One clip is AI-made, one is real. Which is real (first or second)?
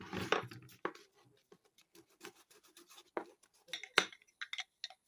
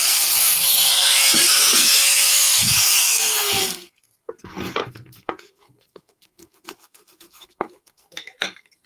first